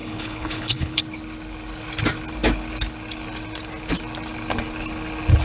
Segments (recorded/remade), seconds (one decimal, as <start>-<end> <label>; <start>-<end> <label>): 0.0-1.0 remade; 1.0-5.4 recorded